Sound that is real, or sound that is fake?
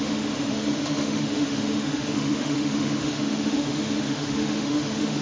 fake